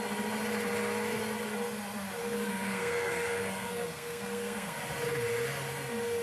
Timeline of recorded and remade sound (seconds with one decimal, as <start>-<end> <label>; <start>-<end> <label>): 0.0-2.2 recorded; 2.2-4.8 remade; 4.8-6.2 recorded